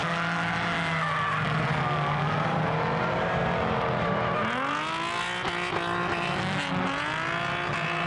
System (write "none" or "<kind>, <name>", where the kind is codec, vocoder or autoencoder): none